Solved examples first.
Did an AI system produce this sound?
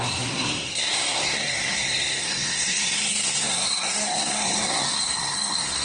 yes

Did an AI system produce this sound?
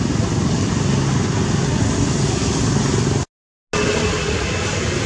no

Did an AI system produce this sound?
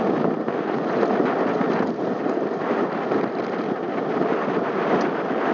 no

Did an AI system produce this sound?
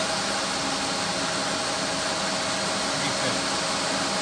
no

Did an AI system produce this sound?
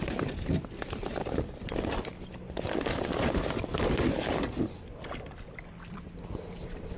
no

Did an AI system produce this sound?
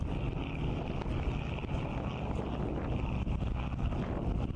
no